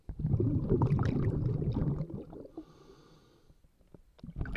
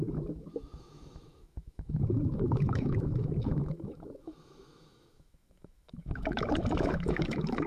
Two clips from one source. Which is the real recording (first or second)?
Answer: first